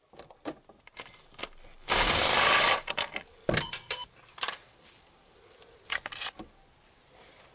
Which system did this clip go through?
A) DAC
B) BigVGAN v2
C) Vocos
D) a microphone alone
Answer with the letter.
D